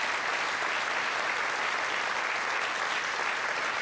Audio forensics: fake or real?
real